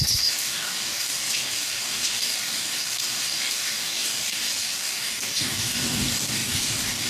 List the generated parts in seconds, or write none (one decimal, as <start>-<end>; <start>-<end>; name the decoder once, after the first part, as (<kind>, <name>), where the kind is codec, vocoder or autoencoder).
0.0-7.1 (codec, DAC)